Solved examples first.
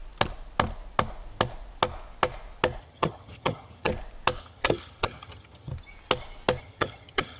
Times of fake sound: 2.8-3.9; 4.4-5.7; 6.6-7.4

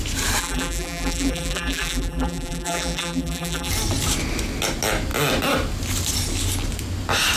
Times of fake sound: 0.4-3.7

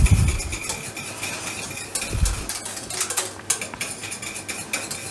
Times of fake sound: none

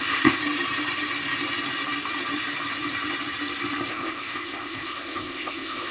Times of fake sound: 0.0-0.4; 3.9-5.9

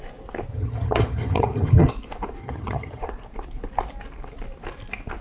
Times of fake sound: 0.5-1.9; 2.4-3.0

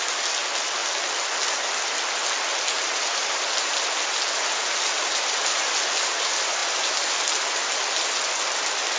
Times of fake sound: none

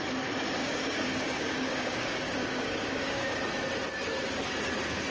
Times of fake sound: 0.6-3.4

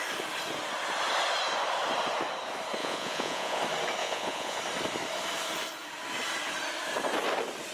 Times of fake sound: 2.8-3.6; 4.0-4.6